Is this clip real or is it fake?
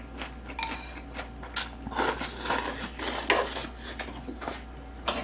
real